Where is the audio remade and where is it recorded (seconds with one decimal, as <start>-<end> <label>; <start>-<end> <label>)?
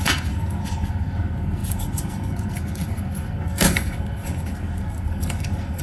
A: 0.0-5.8 remade